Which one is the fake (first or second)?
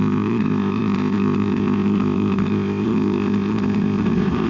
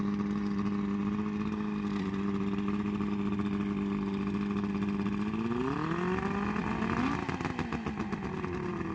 first